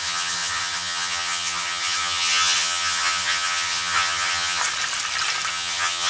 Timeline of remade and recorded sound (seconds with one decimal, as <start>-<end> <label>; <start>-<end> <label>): 0.0-4.6 remade; 4.6-5.5 recorded; 5.5-6.1 remade